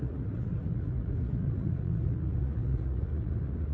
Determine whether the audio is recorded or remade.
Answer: remade